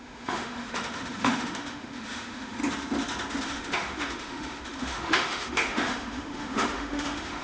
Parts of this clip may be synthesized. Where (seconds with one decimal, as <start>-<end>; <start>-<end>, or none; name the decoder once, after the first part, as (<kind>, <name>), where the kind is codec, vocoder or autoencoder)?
0.0-2.6 (autoencoder, DAC-VAE); 3.4-7.4